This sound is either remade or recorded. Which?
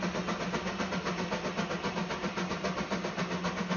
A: recorded